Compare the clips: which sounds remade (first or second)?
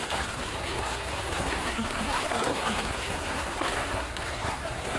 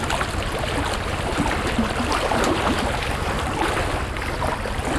first